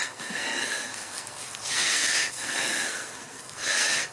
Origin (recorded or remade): remade